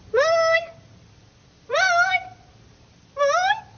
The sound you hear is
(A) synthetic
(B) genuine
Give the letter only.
B